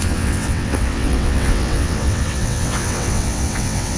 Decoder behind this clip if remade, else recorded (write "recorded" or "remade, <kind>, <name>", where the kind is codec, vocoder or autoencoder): remade, vocoder, WaveNeXt